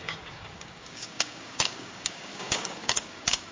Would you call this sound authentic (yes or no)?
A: no